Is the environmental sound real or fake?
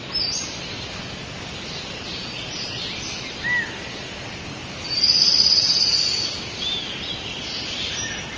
real